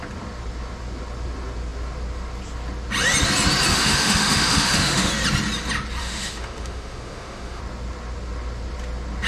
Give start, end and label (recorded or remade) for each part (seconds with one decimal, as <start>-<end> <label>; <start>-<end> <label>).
0.0-3.7 recorded; 3.7-5.1 remade; 5.1-6.0 recorded; 6.0-7.6 remade; 7.6-9.3 recorded